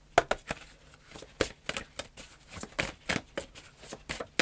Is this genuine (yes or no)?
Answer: yes